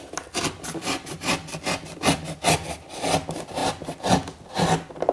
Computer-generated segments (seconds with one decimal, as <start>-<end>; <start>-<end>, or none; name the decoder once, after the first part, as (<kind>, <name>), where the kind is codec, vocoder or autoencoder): none